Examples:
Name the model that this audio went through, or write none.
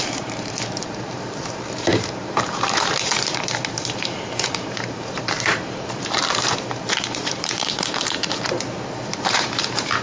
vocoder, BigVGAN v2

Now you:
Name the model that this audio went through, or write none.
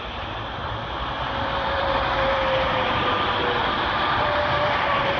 vocoder, BigVGAN v2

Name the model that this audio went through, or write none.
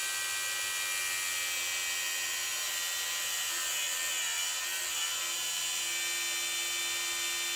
none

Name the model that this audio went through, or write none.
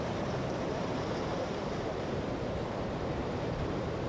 vocoder, BigVGAN v2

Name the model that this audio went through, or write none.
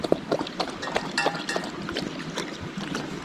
vocoder, BigVGAN v2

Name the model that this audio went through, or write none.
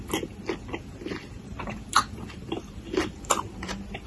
vocoder, BigVGAN v2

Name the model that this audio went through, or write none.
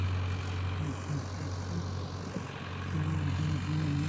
none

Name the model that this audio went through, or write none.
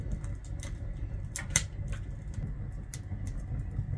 none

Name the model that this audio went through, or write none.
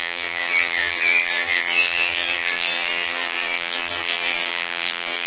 vocoder, BigVGAN v2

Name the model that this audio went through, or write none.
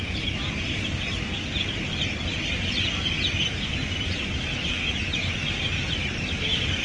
none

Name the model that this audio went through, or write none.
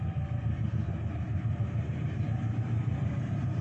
vocoder, BigVGAN v2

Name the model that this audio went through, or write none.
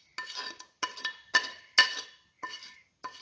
none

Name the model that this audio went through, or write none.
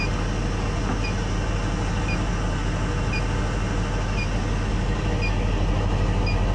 none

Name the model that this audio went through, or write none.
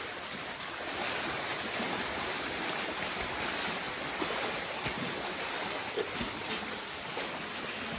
vocoder, BigVGAN v2